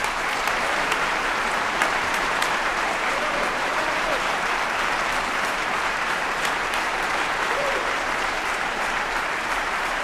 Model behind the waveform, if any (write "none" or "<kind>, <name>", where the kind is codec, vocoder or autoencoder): vocoder, BigVGAN v2